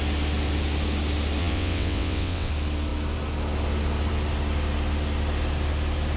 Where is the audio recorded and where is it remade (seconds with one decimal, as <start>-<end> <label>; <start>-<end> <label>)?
0.0-1.4 recorded; 1.4-2.5 remade; 2.5-6.2 recorded